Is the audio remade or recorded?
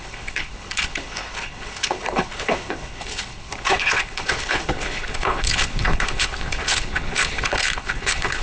remade